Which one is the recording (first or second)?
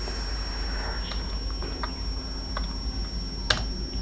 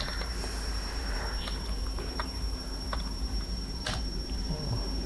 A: first